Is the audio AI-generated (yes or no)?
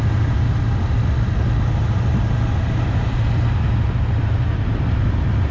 no